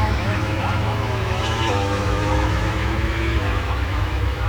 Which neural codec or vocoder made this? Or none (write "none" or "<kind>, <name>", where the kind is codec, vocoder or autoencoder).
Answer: autoencoder, DAC-VAE